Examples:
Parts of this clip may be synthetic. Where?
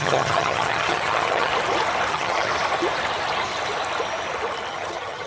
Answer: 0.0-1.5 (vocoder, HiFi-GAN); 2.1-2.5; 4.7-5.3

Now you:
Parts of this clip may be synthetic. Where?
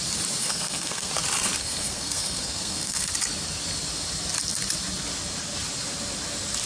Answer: 0.4-1.1 (codec, SNAC); 1.6-3.1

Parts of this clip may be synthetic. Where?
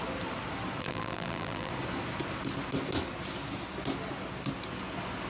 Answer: 0.8-1.7 (vocoder, BigVGAN v2)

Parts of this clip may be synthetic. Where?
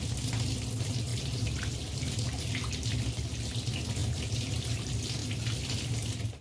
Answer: 1.1-2.7 (vocoder, BigVGAN v2); 4.0-4.5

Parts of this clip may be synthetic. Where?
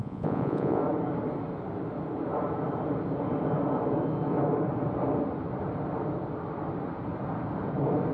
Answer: 0.0-0.8 (vocoder, Vocos)